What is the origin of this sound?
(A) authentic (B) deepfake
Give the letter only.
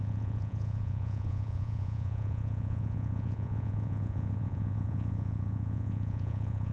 B